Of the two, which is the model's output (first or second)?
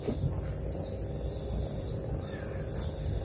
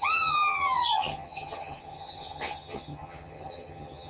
second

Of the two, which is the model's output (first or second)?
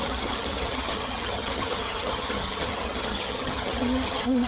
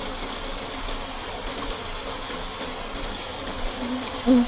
first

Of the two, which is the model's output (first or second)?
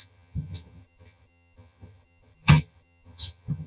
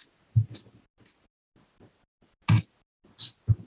first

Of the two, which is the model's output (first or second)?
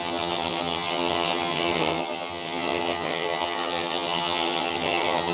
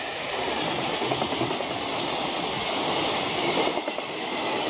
first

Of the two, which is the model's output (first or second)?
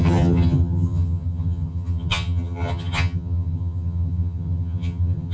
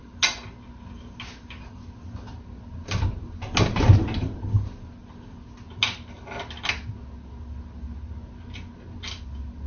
first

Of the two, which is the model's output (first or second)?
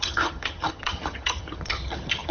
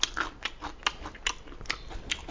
first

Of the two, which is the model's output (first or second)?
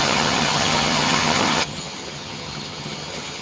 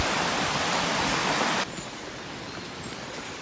first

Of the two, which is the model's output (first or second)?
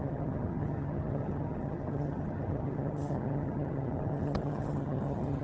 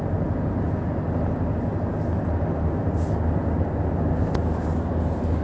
first